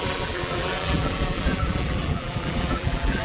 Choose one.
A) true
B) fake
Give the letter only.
B